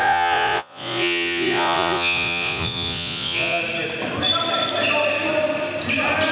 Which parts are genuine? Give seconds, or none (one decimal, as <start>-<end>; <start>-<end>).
3.6-6.3